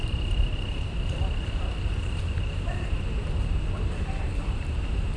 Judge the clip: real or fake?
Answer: fake